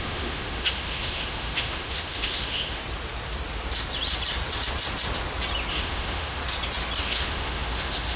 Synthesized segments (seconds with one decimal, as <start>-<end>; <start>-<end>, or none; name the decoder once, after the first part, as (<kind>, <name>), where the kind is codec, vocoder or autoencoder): 0.0-2.8 (autoencoder, DAC-VAE); 5.7-6.4; 7.0-8.2